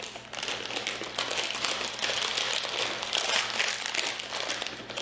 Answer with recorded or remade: recorded